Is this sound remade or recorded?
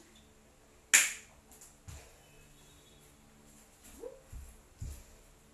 recorded